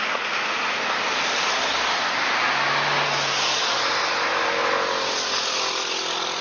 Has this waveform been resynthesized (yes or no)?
no